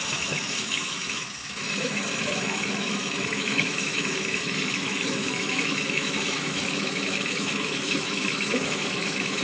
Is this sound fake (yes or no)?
yes